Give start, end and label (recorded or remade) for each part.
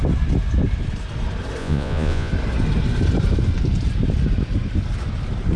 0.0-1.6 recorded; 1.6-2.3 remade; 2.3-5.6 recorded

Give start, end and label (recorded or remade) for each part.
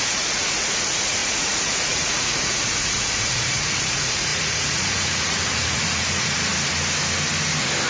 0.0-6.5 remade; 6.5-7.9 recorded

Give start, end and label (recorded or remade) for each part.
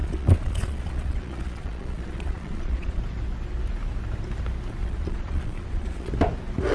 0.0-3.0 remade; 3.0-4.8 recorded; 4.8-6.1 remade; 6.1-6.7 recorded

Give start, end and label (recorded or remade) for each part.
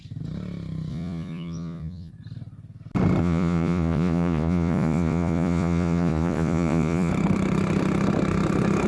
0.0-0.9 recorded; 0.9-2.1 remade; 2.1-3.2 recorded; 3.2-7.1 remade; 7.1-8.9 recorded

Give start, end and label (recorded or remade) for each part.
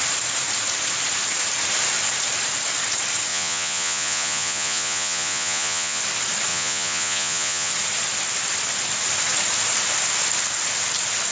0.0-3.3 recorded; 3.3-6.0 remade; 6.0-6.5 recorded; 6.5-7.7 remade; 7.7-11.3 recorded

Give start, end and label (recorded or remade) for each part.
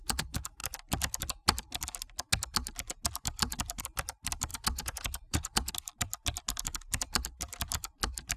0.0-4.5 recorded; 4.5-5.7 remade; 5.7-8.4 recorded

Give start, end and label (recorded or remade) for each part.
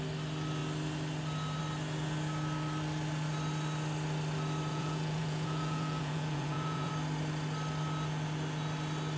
0.0-4.7 recorded; 4.7-6.9 remade; 6.9-9.2 recorded